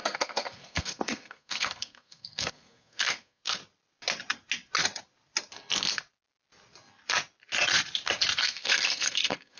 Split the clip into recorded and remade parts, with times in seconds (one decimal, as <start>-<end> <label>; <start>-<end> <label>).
0.0-3.6 remade; 3.6-8.4 recorded; 8.4-9.6 remade